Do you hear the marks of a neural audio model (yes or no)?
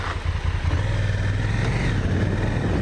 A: no